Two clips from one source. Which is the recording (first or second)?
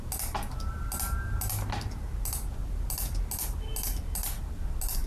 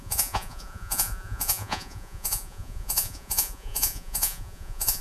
first